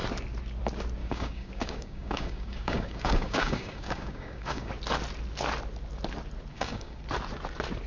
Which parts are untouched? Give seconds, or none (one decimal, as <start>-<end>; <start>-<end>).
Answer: 0.0-1.0; 4.7-6.5; 7.0-7.9